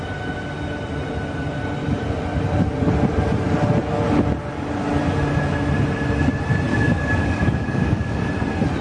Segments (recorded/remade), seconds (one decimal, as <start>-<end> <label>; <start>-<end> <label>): 0.0-6.7 recorded; 6.7-8.3 remade; 8.3-8.8 recorded